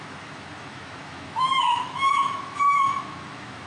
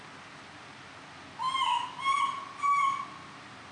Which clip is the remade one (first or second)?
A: first